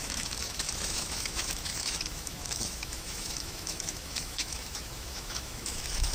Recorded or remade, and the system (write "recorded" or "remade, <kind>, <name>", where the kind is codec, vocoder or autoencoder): remade, autoencoder, DAC-VAE